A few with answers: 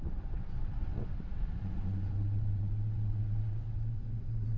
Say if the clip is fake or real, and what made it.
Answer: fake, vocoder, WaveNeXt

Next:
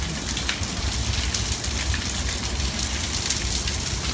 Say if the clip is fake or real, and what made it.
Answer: real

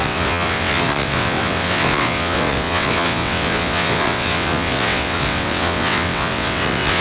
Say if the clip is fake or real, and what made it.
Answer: fake, vocoder, WaveNeXt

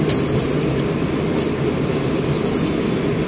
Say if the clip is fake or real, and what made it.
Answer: real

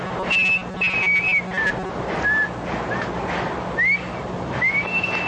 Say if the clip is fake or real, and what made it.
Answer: real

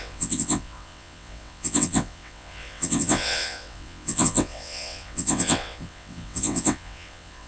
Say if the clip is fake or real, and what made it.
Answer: fake, vocoder, WaveNeXt